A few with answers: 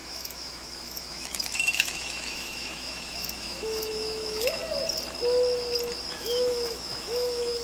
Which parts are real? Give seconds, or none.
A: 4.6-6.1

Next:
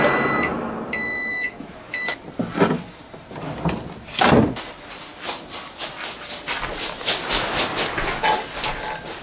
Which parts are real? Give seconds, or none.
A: 0.0-1.3; 2.2-9.2

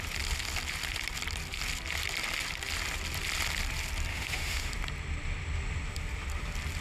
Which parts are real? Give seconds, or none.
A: 0.0-4.1; 4.7-6.8

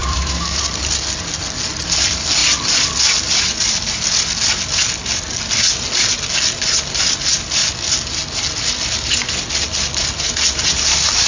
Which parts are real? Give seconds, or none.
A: 0.6-11.3

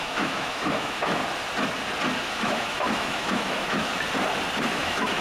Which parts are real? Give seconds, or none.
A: 1.2-2.3; 3.9-4.7